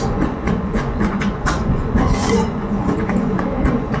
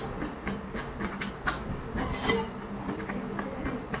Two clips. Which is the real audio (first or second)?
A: second